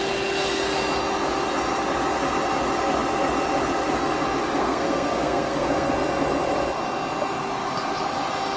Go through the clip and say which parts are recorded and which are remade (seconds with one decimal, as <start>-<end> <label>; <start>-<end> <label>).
0.0-4.6 recorded; 4.6-5.9 remade; 5.9-8.6 recorded